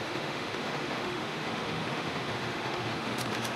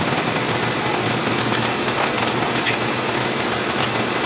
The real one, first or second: second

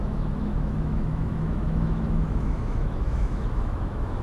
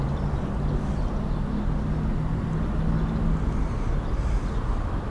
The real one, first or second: second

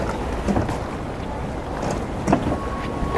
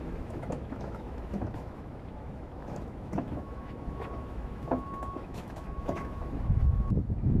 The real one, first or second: first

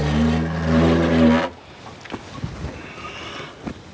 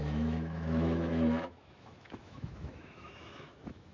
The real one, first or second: first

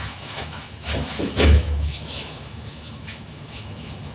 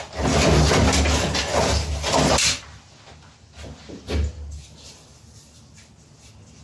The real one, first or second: second